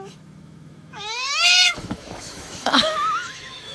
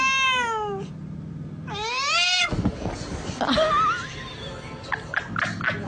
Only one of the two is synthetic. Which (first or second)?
first